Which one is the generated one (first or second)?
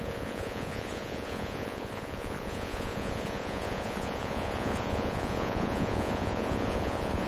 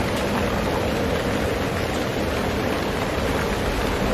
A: first